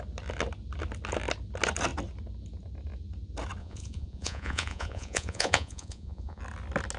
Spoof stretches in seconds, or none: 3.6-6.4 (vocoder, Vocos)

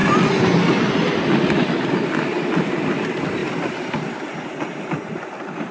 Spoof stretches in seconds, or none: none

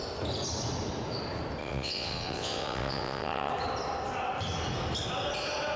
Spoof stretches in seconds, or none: 1.6-3.5 (vocoder, WaveNeXt)

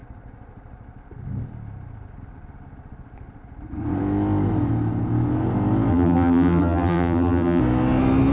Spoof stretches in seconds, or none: 5.9-7.6 (vocoder, BigVGAN v2)

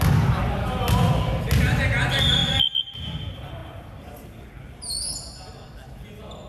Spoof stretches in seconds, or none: none